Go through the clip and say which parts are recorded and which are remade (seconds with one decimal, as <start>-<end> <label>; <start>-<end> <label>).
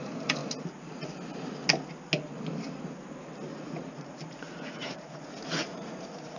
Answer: 0.0-3.5 recorded; 3.5-6.4 remade